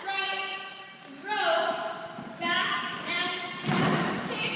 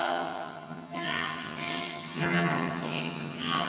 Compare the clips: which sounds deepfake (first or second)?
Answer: second